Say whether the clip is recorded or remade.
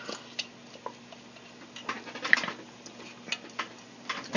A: recorded